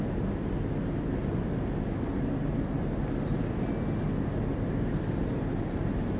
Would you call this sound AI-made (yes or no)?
no